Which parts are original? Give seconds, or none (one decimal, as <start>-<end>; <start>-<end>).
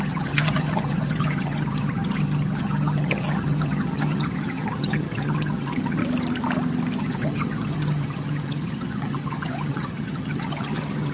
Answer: 6.0-7.0